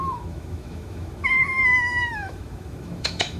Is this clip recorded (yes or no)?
no